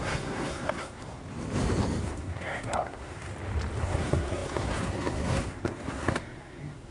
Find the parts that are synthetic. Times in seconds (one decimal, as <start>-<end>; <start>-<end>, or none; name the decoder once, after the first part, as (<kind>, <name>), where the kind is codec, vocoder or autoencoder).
0.0-1.2 (codec, SNAC); 2.0-3.3; 3.8-6.9